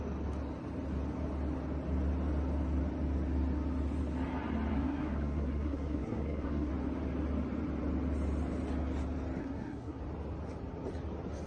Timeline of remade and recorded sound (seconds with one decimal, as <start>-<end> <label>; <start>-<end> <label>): 0.0-4.7 recorded; 4.7-6.7 remade; 6.7-9.4 recorded; 9.4-10.0 remade; 10.0-11.5 recorded